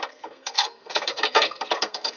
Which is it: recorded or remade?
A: remade